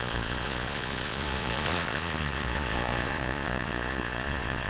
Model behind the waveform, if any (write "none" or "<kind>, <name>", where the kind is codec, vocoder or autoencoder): vocoder, Vocos